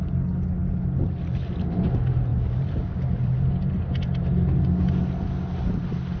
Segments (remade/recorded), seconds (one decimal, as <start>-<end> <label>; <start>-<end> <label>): 0.0-6.2 recorded